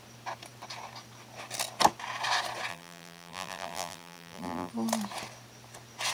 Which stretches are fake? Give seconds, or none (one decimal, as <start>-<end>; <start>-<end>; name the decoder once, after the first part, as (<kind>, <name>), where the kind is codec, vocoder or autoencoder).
2.7-4.7 (vocoder, BigVGAN v2)